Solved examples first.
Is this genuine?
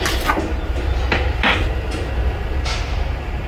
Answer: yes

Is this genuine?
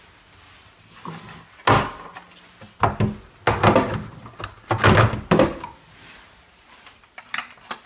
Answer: yes